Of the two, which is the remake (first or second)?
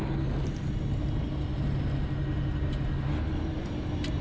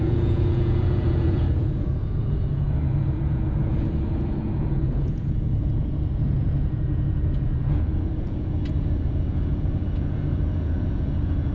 second